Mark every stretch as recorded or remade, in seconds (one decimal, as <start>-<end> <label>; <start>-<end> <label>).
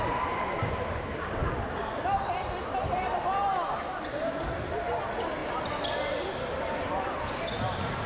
0.0-3.4 remade; 3.4-4.3 recorded; 4.3-8.1 remade